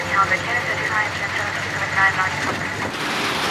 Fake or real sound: fake